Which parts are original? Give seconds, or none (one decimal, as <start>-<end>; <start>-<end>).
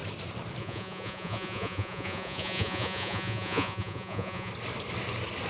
0.0-0.6; 4.5-5.5